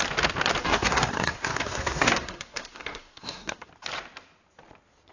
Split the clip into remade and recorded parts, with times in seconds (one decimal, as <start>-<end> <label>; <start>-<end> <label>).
0.0-0.6 recorded; 0.6-3.7 remade; 3.7-5.1 recorded